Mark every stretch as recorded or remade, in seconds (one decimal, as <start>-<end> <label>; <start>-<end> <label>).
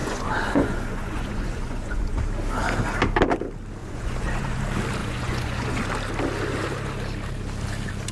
0.0-2.2 remade; 2.2-3.8 recorded; 3.8-4.6 remade; 4.6-5.0 recorded; 5.0-5.8 remade; 5.8-8.1 recorded